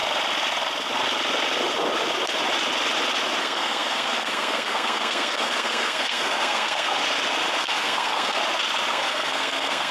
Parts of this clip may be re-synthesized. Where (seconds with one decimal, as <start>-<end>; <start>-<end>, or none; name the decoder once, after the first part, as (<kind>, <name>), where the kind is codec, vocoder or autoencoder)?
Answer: 3.4-7.0 (codec, SNAC); 7.6-8.4; 8.9-9.9